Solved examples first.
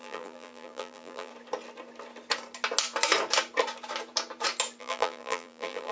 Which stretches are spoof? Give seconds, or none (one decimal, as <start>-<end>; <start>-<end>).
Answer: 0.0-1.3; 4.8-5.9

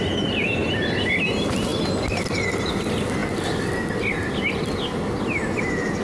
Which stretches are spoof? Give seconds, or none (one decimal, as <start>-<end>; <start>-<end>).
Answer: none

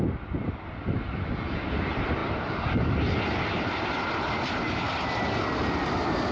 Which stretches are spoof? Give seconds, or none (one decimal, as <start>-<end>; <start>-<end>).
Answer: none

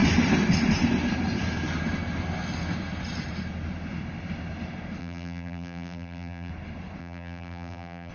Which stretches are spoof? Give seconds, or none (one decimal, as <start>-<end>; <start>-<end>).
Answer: 5.0-6.5; 7.0-8.1

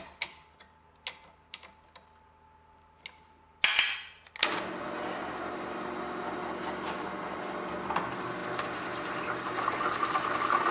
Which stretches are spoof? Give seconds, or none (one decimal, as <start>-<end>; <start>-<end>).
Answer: none